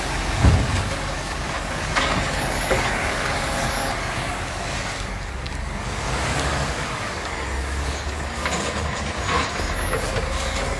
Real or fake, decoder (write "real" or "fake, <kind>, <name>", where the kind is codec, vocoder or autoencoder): fake, codec, DAC